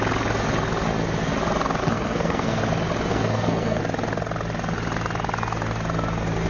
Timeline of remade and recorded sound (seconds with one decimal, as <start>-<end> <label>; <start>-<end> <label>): 0.0-1.8 recorded; 1.8-2.6 remade; 2.6-3.1 recorded; 3.1-3.8 remade; 3.8-6.5 recorded